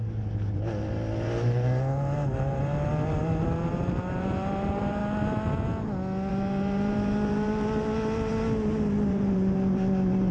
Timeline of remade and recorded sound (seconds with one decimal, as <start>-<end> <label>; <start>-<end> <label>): 0.0-5.0 remade; 5.0-6.3 recorded; 6.3-8.3 remade; 8.3-9.1 recorded; 9.1-10.3 remade